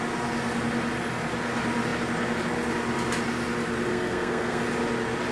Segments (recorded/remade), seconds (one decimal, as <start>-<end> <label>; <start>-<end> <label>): 0.0-3.9 recorded; 3.9-4.6 remade; 4.6-5.3 recorded